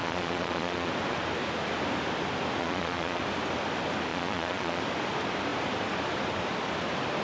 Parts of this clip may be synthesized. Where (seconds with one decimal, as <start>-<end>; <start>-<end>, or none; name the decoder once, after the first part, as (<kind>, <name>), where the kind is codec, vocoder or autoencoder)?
0.0-0.9 (vocoder, Vocos); 2.6-3.2; 4.1-4.8